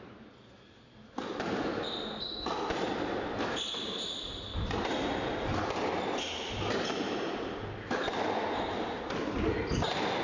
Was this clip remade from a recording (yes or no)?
no